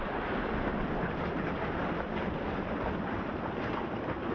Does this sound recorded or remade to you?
recorded